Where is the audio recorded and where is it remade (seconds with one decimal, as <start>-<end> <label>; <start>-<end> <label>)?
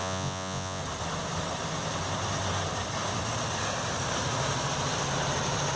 0.0-0.8 remade; 0.8-5.8 recorded